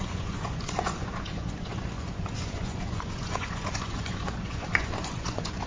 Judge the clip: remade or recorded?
remade